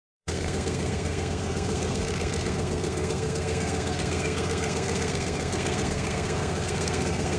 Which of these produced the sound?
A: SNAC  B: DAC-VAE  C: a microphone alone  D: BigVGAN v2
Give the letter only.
A